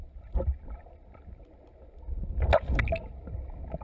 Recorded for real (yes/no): yes